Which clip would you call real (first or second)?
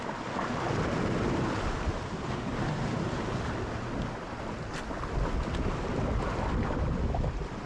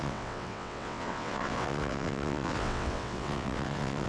first